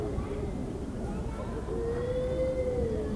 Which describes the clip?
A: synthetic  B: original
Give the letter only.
B